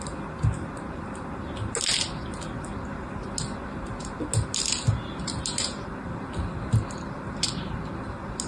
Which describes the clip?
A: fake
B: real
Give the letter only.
B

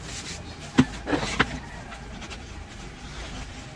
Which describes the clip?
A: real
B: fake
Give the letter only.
A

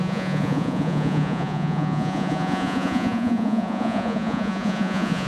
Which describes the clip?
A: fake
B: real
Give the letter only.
A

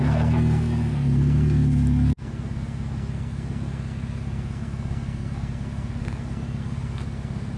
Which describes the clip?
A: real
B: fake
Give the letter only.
B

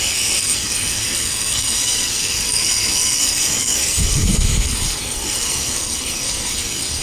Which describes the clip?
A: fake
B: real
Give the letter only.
A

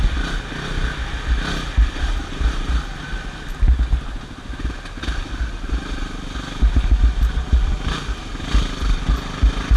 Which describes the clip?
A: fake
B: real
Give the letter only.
B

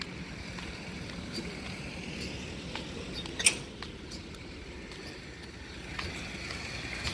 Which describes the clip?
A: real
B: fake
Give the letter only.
A